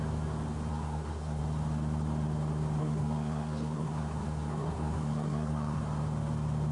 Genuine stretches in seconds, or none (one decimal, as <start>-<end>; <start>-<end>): 0.0-0.7; 1.4-2.8; 5.8-6.7